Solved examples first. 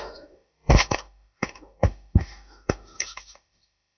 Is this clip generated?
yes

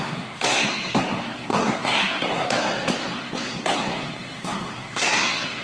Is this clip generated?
yes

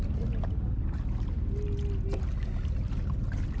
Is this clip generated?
no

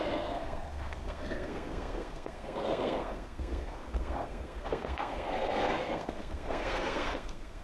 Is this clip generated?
yes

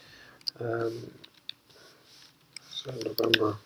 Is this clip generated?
no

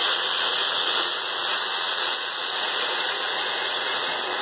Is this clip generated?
yes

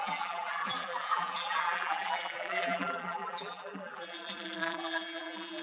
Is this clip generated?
yes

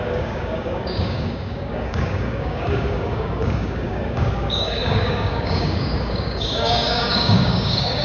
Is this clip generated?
yes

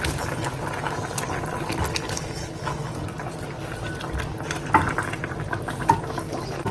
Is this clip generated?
no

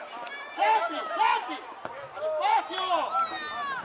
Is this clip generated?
no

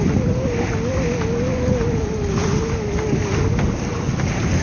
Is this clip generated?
no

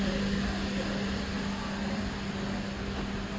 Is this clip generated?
no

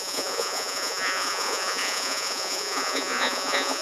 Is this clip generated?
yes